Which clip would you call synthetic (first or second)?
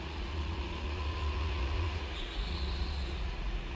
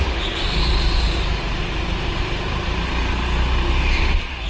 first